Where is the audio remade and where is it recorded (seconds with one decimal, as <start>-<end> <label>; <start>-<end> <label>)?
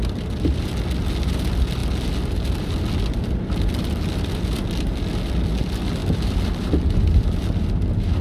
0.0-6.0 recorded; 6.0-7.4 remade; 7.4-8.2 recorded